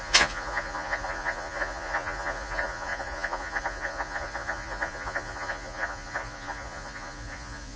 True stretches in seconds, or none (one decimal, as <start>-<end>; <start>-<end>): none